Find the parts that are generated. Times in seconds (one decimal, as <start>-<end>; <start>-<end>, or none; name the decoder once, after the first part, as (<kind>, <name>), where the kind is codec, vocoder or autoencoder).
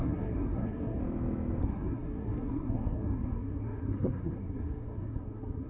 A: 0.0-1.0 (codec, SNAC); 1.6-5.7